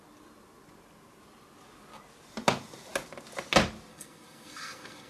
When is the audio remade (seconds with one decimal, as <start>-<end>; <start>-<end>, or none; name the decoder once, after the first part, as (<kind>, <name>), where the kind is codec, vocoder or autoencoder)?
3.9-5.1 (codec, SNAC)